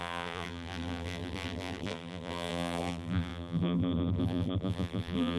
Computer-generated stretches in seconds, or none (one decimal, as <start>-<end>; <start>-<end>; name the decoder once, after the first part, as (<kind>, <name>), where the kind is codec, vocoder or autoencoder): 0.0-5.4 (vocoder, BigVGAN v2)